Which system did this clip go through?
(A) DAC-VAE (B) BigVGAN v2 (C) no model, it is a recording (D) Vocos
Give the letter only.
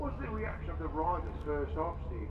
C